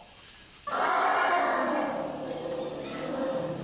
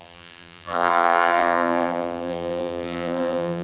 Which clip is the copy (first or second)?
second